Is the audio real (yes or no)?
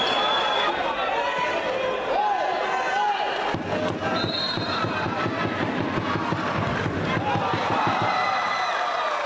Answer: yes